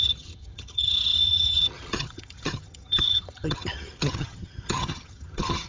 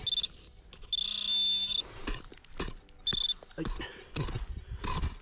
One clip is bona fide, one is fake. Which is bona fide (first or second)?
second